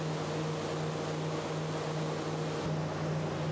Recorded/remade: recorded